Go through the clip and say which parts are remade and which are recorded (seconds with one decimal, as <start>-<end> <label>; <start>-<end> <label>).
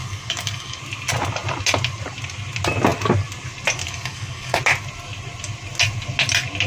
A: 0.0-0.8 remade; 0.8-3.8 recorded; 3.8-4.6 remade; 4.6-6.7 recorded